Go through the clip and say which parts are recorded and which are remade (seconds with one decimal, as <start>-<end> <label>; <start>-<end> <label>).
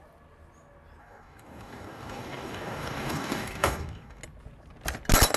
0.0-1.0 recorded; 1.0-4.2 remade; 4.2-5.4 recorded